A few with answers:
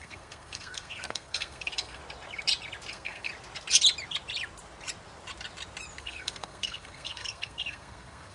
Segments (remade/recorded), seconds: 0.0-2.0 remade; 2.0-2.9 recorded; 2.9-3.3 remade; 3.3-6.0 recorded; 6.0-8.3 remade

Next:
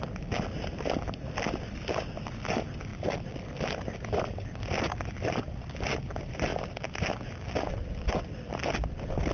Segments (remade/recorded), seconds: 0.0-9.3 recorded

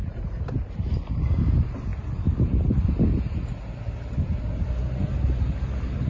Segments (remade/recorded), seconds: 0.0-6.1 recorded

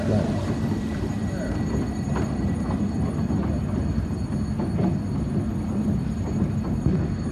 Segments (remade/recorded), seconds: 0.0-7.3 recorded